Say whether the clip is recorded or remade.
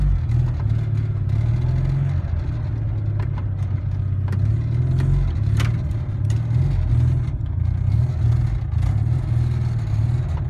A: recorded